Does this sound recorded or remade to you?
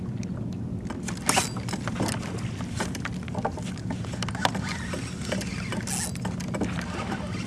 recorded